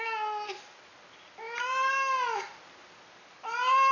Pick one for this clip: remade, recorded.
recorded